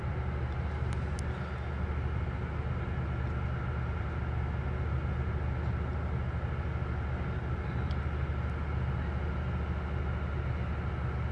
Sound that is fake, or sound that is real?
real